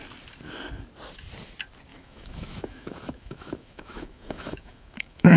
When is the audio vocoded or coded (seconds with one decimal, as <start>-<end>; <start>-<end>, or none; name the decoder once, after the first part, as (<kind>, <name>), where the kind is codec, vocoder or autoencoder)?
1.9-5.4 (autoencoder, DAC-VAE)